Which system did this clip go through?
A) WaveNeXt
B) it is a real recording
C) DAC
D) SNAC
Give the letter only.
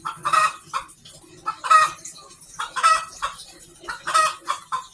B